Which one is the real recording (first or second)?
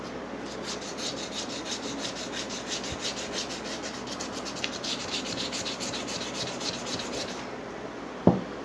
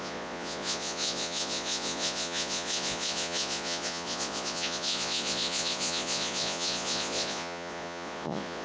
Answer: first